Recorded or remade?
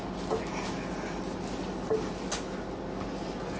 recorded